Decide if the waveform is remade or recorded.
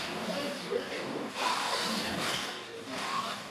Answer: remade